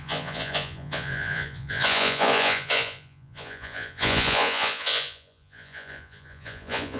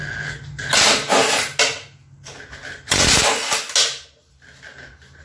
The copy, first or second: first